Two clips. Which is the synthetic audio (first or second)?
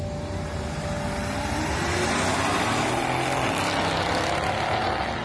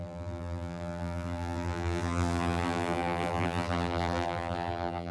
second